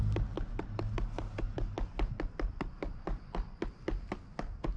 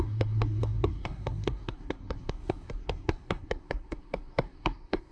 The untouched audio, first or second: first